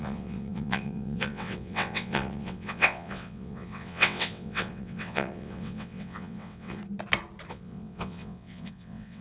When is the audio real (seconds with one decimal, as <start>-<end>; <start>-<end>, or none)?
6.8-7.5